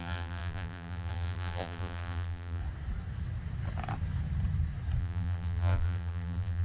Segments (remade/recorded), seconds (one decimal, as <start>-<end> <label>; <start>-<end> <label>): 0.0-2.6 remade; 2.6-5.0 recorded; 5.0-6.6 remade